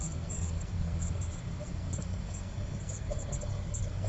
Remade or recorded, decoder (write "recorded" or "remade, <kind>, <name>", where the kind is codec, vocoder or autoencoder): remade, codec, SNAC